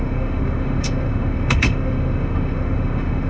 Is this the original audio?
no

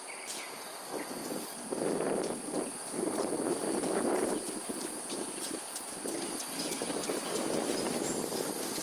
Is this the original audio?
yes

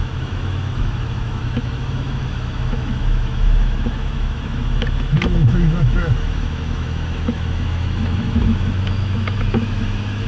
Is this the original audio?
no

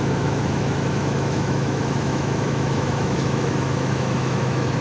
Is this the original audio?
no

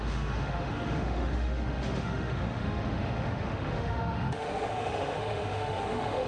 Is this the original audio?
no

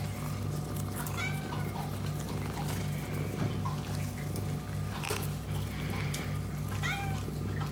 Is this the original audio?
yes